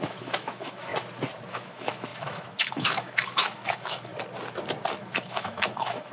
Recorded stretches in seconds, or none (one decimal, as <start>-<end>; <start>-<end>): 0.9-1.5; 4.1-4.9